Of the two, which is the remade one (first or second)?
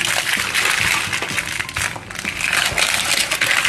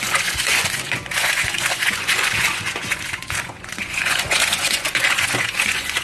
second